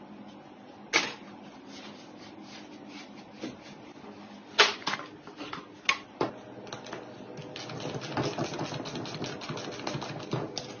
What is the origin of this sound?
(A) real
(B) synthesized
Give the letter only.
A